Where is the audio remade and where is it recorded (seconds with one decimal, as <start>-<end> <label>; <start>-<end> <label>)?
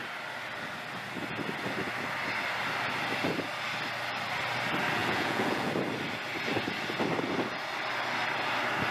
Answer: 0.0-5.0 recorded; 5.0-5.7 remade; 5.7-8.9 recorded